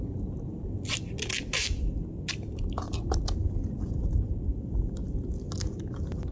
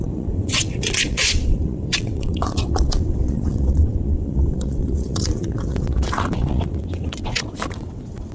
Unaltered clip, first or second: first